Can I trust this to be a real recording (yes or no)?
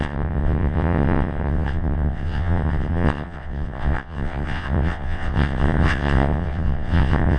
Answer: no